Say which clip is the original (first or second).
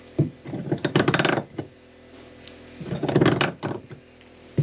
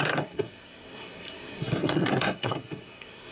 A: first